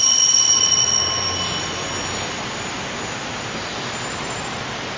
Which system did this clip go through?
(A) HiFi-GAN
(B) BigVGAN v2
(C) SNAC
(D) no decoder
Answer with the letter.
D